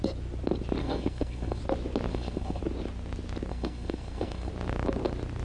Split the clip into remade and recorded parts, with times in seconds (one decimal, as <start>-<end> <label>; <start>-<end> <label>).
0.0-0.8 recorded; 0.8-1.6 remade; 1.6-2.1 recorded; 2.1-2.6 remade; 2.6-3.5 recorded; 3.5-4.5 remade; 4.5-5.4 recorded